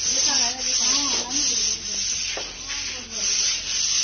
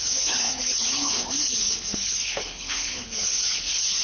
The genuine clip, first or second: first